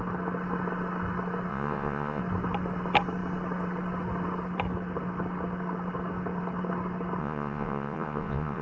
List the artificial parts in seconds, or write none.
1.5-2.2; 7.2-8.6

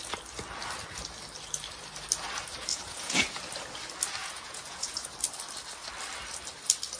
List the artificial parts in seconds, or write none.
2.7-3.3; 4.2-5.1

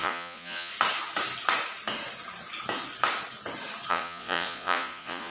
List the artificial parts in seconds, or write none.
0.0-0.7; 3.9-5.3

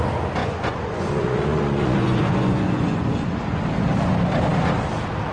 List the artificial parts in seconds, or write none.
0.4-3.6